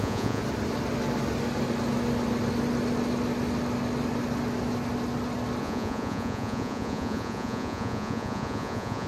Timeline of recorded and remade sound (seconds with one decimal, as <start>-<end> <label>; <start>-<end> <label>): 0.0-0.4 remade; 0.4-5.6 recorded; 5.6-9.1 remade